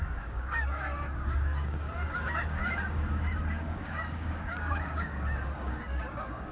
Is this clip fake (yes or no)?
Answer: yes